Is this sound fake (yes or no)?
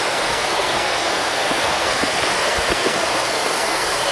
yes